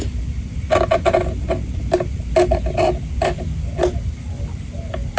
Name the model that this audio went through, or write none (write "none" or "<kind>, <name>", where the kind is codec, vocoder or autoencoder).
none